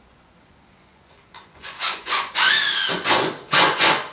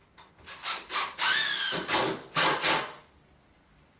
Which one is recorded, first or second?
second